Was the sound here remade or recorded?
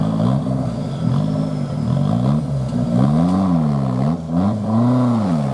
recorded